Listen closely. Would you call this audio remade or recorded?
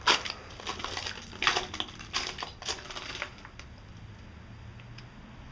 recorded